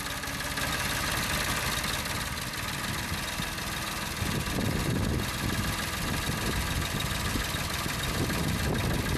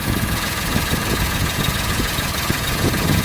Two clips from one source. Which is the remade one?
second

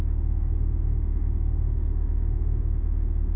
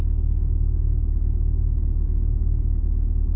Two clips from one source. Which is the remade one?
first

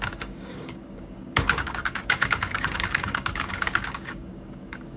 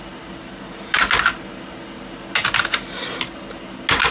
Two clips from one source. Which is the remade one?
first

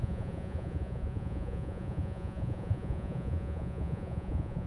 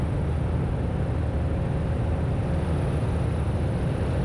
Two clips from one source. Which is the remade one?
first